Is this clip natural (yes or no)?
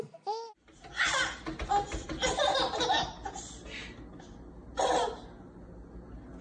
yes